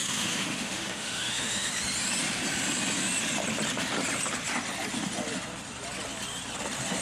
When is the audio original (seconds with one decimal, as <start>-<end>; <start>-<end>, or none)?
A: 1.7-7.0